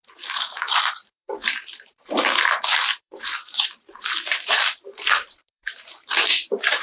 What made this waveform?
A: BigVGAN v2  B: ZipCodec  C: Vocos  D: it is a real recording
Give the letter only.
A